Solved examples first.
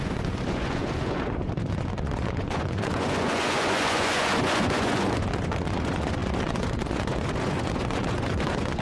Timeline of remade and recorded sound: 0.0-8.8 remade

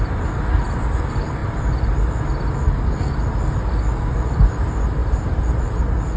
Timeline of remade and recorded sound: 0.0-6.2 recorded

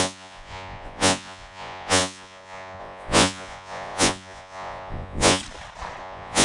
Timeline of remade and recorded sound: 0.0-5.4 remade; 5.4-6.0 recorded; 6.0-6.4 remade

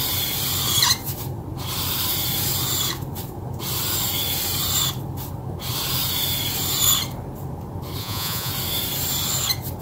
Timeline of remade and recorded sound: 0.0-8.0 recorded; 8.0-8.5 remade; 8.5-9.8 recorded

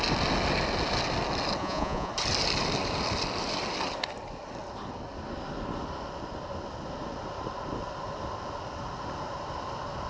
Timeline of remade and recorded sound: 0.0-1.6 recorded; 1.6-2.1 remade; 2.1-10.1 recorded